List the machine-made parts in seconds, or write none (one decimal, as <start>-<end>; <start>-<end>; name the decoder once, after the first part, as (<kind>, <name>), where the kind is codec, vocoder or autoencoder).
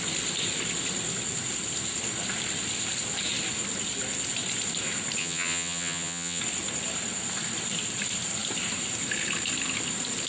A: 5.2-6.4 (vocoder, HiFi-GAN)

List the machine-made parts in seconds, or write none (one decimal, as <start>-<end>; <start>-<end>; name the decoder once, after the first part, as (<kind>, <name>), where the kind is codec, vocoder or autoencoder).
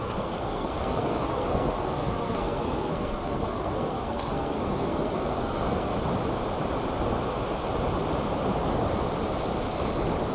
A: 0.0-5.9 (codec, SNAC)